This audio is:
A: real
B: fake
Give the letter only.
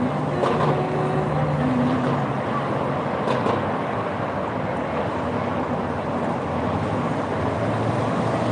A